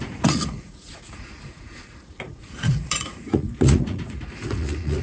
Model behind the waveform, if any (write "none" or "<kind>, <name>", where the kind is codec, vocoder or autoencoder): vocoder, Vocos